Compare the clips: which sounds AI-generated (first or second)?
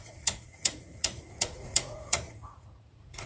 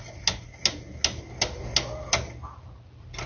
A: first